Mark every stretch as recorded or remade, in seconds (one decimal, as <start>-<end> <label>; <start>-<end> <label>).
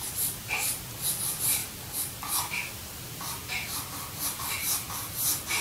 0.0-5.6 recorded